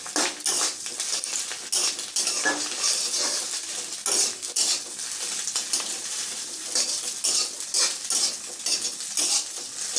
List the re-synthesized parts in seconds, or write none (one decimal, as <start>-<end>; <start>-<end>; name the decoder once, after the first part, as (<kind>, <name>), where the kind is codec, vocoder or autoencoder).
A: 5.6-6.7 (vocoder, BigVGAN v2)